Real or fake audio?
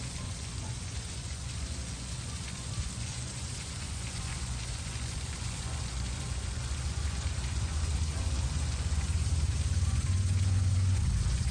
fake